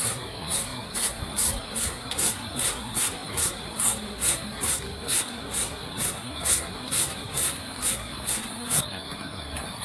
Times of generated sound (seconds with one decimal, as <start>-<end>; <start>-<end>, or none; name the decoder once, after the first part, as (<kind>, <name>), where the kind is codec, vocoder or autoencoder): 0.0-9.8 (codec, SNAC)